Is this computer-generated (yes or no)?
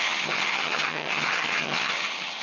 yes